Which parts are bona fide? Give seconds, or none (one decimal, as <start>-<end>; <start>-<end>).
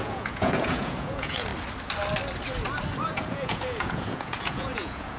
1.5-3.0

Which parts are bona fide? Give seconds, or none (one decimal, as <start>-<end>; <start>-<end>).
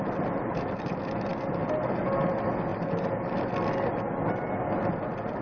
0.0-5.4